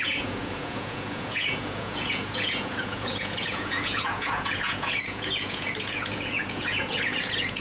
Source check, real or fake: fake